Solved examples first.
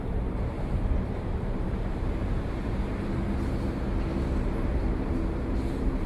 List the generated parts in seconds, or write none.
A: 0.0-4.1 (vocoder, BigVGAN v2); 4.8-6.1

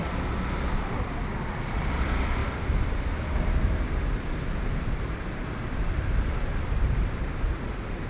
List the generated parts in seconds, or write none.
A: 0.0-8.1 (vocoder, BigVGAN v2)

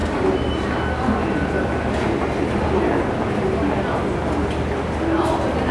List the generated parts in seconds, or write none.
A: 0.0-0.7 (vocoder, BigVGAN v2)

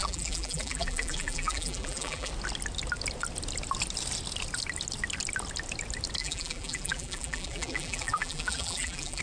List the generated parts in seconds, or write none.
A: 0.0-2.3 (vocoder, BigVGAN v2); 6.2-9.2

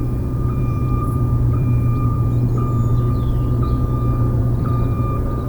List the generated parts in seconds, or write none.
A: 0.0-2.9 (vocoder, BigVGAN v2); 4.4-5.5

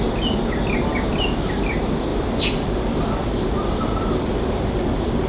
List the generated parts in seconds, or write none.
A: 2.1-5.3 (vocoder, BigVGAN v2)

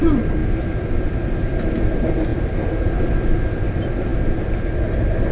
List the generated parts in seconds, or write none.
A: none